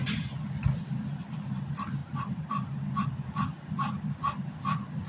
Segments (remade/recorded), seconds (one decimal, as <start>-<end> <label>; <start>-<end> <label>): 0.0-2.0 recorded; 2.0-2.5 remade; 2.5-5.1 recorded